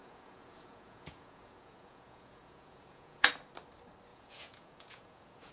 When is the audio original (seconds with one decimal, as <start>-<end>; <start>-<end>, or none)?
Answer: 3.3-4.1